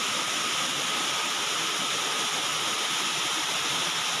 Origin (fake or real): real